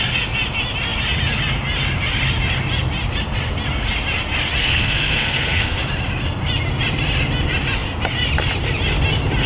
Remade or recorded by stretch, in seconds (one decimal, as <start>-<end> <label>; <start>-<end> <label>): 0.0-4.6 recorded; 4.6-5.8 remade; 5.8-9.5 recorded